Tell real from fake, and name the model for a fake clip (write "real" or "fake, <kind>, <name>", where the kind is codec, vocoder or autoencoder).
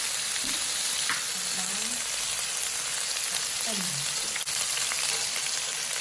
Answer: real